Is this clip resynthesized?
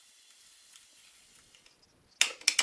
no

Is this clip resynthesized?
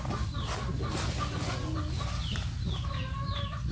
no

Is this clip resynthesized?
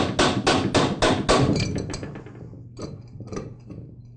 no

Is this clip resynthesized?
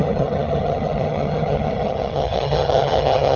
yes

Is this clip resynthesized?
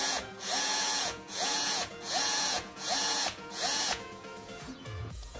yes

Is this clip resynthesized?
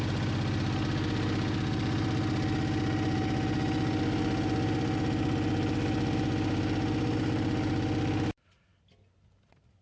no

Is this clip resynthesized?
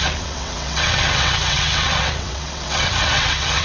yes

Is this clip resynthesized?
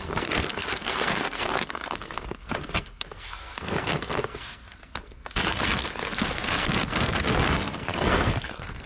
yes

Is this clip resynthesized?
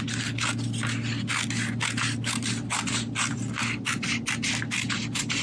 no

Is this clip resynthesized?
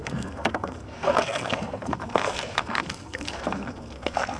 yes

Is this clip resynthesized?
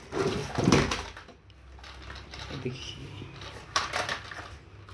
no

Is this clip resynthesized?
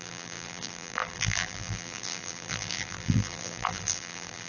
yes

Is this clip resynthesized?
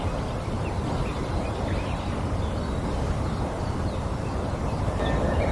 no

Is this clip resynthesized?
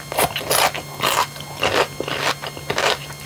no